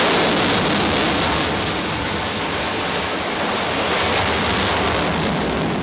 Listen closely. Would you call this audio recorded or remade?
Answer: recorded